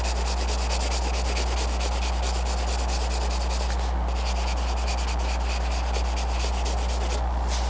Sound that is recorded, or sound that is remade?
recorded